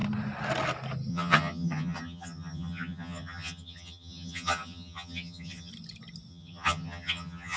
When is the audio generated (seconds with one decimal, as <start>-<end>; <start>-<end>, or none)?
1.1-5.7; 6.3-7.6